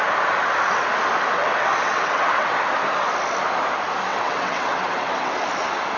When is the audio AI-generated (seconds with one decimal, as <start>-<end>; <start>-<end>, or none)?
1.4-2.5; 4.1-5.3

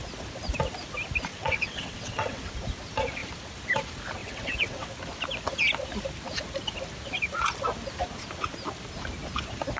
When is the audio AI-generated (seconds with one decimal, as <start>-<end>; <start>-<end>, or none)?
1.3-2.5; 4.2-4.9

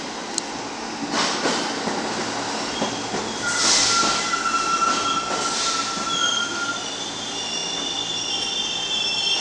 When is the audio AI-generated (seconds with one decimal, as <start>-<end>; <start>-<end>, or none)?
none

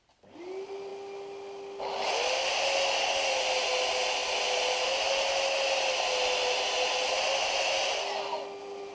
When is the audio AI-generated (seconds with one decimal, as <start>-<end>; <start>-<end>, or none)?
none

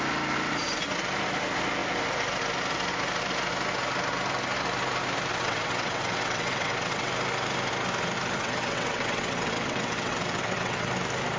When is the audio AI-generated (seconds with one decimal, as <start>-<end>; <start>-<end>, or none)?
5.3-7.1; 8.4-10.9

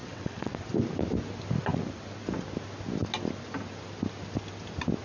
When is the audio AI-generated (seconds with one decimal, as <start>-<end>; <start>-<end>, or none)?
0.0-0.5